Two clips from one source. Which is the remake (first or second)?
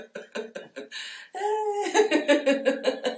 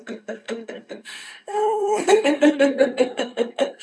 second